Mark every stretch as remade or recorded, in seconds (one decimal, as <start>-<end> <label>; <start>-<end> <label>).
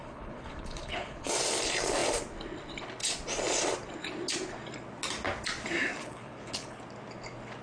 0.0-1.3 remade; 1.3-6.0 recorded; 6.0-6.8 remade; 6.8-7.6 recorded